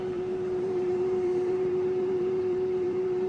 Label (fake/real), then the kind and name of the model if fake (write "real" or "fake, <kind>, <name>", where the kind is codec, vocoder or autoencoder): fake, vocoder, BigVGAN v2